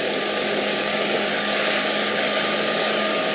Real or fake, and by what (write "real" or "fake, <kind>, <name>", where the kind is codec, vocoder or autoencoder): fake, codec, DAC